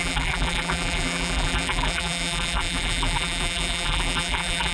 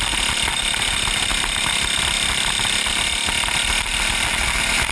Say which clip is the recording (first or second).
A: second